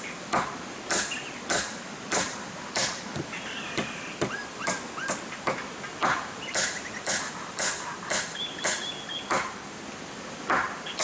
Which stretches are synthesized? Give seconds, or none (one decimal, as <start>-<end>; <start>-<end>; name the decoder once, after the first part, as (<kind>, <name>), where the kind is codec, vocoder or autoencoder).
6.0-7.9 (vocoder, BigVGAN v2)